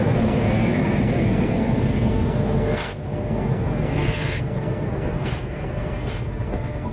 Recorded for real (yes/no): no